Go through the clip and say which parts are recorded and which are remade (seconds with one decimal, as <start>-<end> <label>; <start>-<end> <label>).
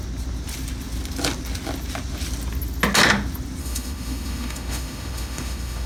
0.0-3.6 recorded; 3.6-5.9 remade